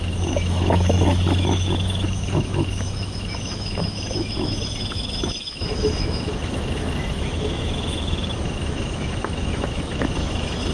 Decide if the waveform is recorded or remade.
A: remade